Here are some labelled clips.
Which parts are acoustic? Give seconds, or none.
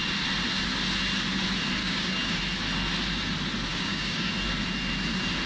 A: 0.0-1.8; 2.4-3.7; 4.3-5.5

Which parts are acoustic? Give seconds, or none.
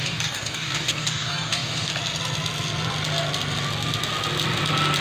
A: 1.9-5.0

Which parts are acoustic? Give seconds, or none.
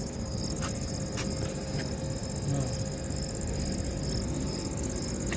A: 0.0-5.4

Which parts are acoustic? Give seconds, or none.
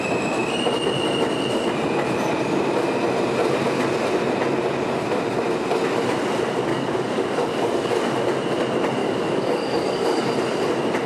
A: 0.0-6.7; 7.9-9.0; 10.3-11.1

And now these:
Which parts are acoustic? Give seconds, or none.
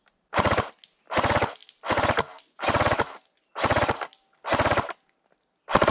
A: 0.0-5.9